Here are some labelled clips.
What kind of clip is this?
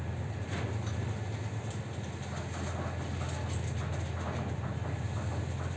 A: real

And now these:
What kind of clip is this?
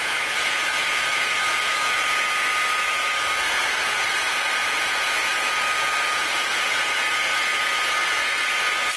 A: fake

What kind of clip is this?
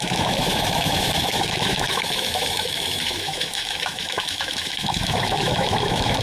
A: fake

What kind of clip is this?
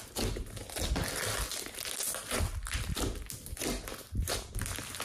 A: real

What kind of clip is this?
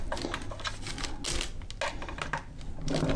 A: real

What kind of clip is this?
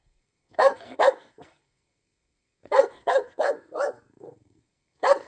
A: fake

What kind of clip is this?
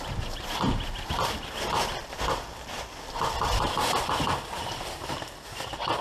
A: real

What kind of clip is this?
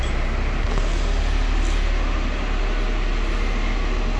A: real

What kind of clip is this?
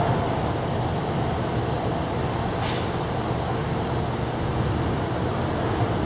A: real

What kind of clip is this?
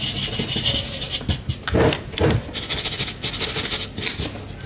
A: real